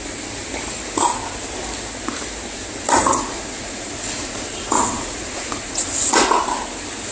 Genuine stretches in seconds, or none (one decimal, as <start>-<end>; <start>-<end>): 0.0-3.2; 6.4-7.1